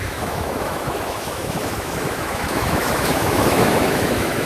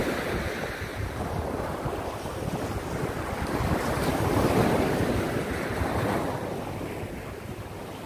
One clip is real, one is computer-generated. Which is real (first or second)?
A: second